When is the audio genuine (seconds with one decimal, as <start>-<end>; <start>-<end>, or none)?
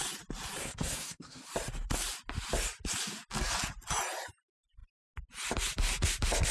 0.0-0.6; 1.5-6.5